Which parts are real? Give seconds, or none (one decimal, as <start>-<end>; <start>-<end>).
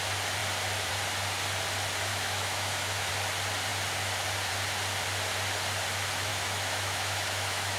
0.0-2.1; 3.1-6.3